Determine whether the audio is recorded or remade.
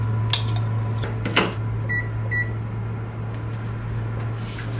recorded